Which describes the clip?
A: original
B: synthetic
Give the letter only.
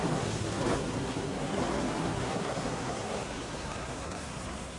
B